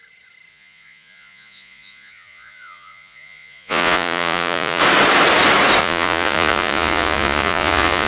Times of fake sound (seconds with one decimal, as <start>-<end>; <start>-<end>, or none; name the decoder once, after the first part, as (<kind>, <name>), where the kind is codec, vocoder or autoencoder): 0.5-4.8 (vocoder, Vocos); 5.8-8.1